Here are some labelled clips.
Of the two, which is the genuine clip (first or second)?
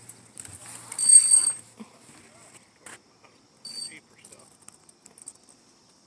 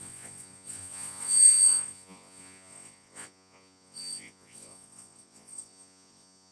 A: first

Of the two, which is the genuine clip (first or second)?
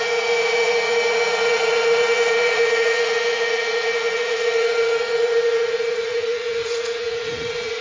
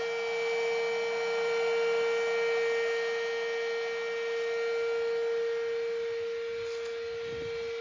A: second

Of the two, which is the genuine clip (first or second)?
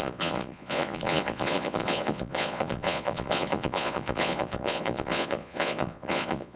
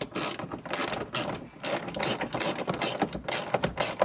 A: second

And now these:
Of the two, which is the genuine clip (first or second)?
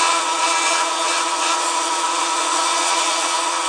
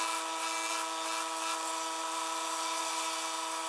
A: second